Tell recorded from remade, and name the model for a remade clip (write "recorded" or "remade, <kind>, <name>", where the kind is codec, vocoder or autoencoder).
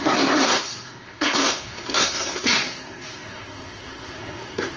remade, codec, SNAC